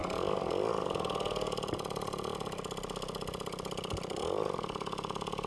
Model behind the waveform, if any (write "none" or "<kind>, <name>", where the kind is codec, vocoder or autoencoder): none